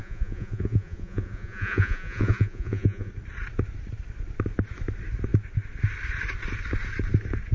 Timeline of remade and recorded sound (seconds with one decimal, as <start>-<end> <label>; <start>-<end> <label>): 0.0-3.1 remade; 3.1-7.5 recorded